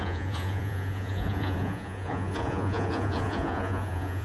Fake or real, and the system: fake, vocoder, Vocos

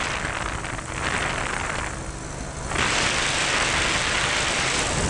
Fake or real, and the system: real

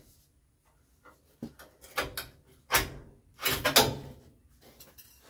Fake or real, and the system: real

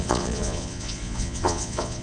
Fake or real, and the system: fake, vocoder, Vocos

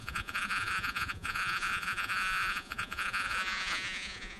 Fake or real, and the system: fake, vocoder, Vocos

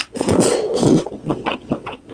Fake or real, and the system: fake, vocoder, WaveNeXt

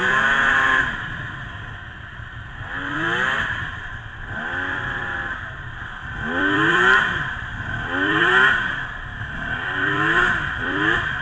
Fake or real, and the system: fake, vocoder, BigVGAN v2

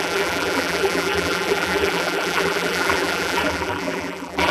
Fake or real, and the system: fake, vocoder, BigVGAN v2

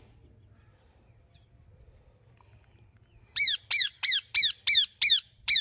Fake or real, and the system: real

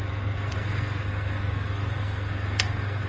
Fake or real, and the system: fake, codec, SNAC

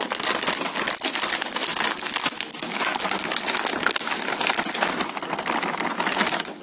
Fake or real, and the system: real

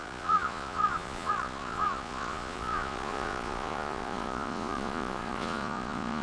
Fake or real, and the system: fake, vocoder, Vocos